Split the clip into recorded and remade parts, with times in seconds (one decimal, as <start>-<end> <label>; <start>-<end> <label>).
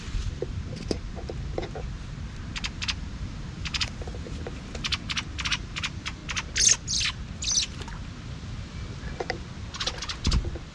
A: 0.0-4.9 remade; 4.9-5.6 recorded; 5.6-6.2 remade; 6.2-10.7 recorded